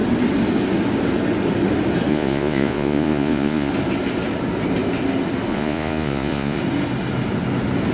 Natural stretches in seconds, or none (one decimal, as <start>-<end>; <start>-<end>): 0.0-2.1; 3.7-5.5; 6.6-7.9